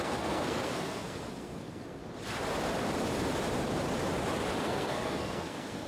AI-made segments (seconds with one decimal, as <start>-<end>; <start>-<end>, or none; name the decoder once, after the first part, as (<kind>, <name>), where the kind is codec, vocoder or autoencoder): 0.0-2.0 (codec, SNAC); 4.6-5.9